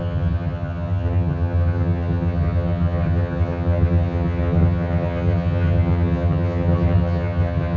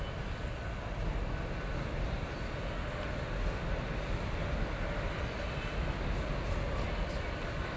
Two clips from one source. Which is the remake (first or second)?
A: first